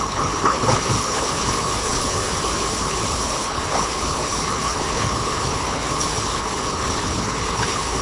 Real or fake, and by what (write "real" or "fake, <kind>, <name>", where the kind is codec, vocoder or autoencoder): fake, codec, HILCodec